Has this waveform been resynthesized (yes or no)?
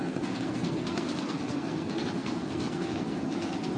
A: yes